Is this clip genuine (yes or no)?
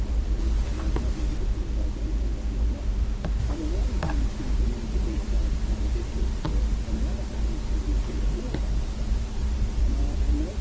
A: no